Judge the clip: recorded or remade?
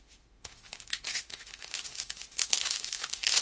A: remade